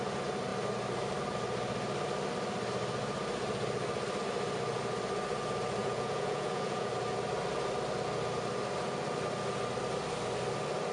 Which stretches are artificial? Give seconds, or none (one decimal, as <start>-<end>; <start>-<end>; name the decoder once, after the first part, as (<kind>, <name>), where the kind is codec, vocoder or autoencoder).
5.8-6.9 (vocoder, Vocos)